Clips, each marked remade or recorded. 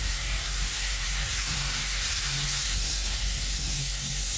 remade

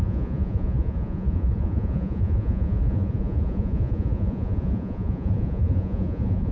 remade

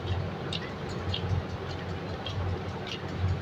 recorded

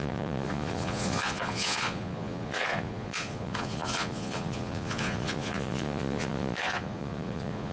remade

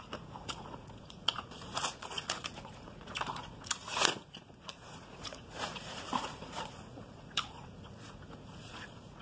remade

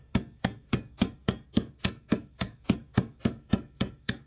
remade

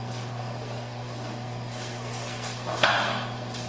remade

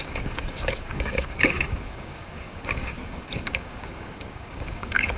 remade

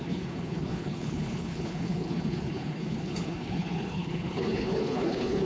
remade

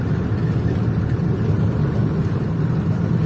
recorded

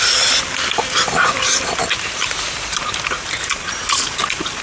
recorded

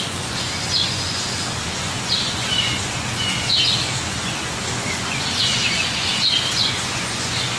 remade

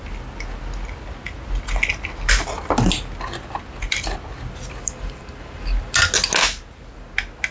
recorded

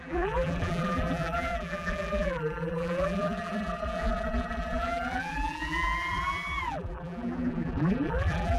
remade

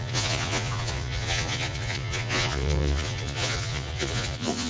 remade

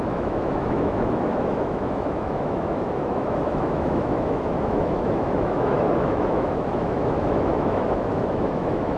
remade